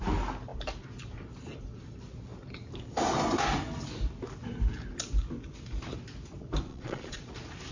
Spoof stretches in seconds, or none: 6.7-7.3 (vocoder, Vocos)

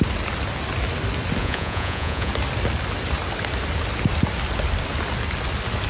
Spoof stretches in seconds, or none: 1.4-2.3 (vocoder, Vocos)

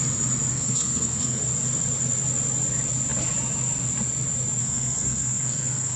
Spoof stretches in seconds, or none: 0.5-1.4 (codec, SNAC); 4.6-6.0